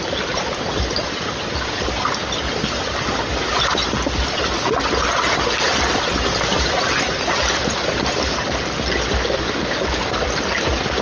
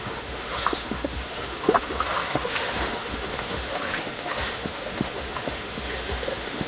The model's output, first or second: second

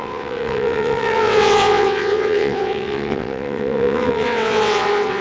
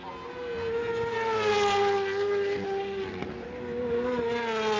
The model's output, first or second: first